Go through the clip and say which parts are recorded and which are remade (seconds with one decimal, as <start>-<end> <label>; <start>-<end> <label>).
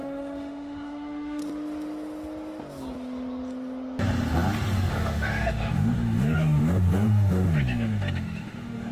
0.0-1.4 remade; 1.4-4.9 recorded; 4.9-8.9 remade